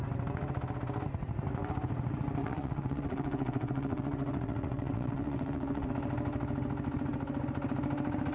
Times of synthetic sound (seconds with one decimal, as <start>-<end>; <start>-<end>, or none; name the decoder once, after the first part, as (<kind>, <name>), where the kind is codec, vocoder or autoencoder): 2.4-5.9 (vocoder, WaveNeXt)